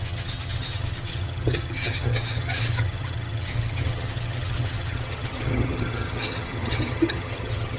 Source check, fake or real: fake